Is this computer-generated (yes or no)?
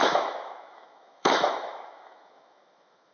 yes